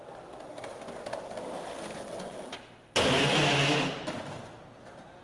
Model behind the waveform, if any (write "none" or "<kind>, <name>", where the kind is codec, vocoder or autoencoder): none